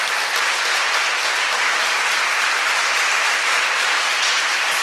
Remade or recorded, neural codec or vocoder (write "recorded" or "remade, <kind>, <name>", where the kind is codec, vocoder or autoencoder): recorded